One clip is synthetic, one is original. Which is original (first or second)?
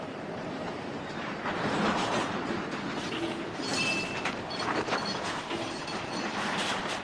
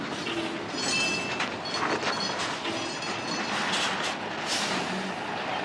second